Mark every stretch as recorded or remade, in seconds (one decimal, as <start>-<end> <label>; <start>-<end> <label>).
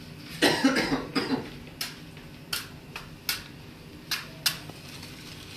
0.0-5.6 recorded